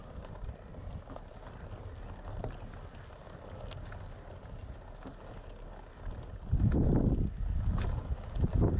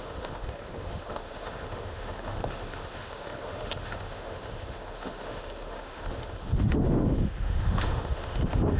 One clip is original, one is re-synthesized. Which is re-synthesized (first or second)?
second